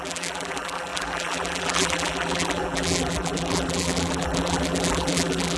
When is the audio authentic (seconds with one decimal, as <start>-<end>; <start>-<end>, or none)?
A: none